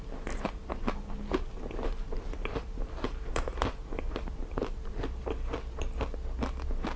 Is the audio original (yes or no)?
yes